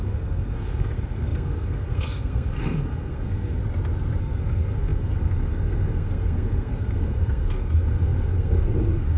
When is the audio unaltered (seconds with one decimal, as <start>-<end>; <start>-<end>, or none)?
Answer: 3.6-4.2